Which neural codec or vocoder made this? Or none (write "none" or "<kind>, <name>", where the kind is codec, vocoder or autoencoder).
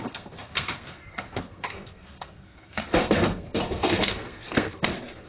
codec, SNAC